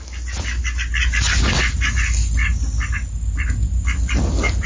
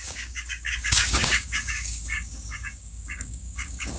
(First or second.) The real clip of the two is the first